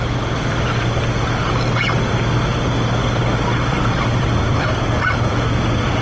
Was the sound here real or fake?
real